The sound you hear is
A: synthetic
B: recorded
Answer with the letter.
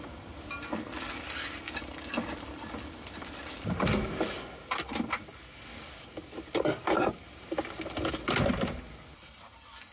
B